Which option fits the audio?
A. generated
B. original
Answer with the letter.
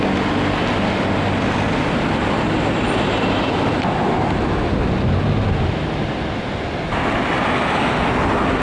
B